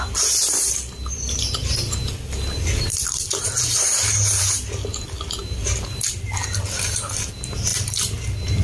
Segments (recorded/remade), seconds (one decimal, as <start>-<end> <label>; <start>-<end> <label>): 0.0-8.6 remade